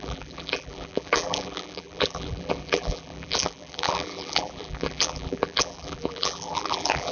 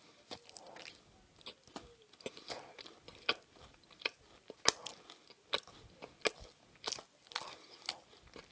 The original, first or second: second